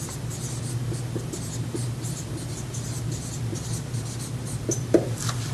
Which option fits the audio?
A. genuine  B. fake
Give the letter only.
A